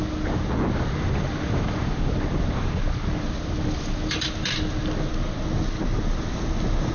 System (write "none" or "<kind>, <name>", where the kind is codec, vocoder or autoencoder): none